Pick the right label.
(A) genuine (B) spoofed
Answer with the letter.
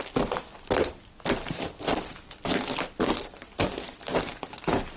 A